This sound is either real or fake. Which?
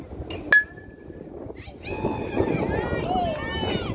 real